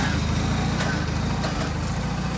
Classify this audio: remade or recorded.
recorded